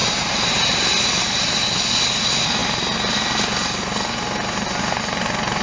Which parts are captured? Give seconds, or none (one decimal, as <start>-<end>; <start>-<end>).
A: 1.6-5.6